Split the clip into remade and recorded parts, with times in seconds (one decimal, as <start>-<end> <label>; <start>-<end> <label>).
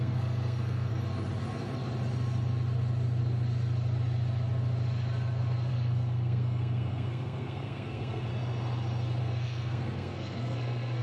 0.0-0.9 remade; 0.9-5.7 recorded; 5.7-8.3 remade; 8.3-9.2 recorded; 9.2-11.0 remade